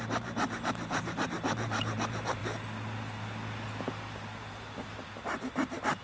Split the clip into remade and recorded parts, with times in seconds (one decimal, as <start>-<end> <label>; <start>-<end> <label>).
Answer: 0.0-2.4 remade; 2.4-4.4 recorded; 4.4-6.0 remade

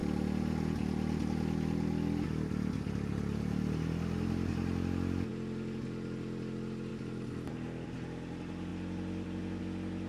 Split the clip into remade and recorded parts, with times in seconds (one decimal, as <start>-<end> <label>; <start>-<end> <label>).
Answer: 0.0-10.1 recorded